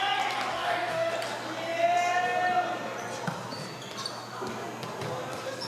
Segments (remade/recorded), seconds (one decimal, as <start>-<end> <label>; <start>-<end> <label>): 0.0-0.5 recorded; 0.5-1.1 remade; 1.1-5.7 recorded